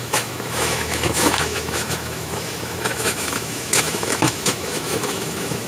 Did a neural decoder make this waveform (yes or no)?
yes